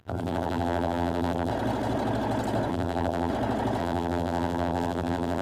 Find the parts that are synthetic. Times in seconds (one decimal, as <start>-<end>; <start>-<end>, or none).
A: 0.0-1.5; 2.7-3.3; 3.8-5.4